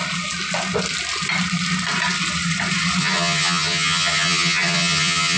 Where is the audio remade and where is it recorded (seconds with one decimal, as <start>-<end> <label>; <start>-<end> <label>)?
0.0-3.0 recorded; 3.0-5.4 remade